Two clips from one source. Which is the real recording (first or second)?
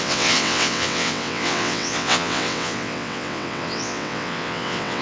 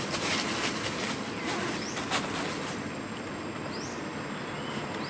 second